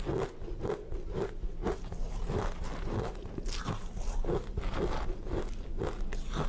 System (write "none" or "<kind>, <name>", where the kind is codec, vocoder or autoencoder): none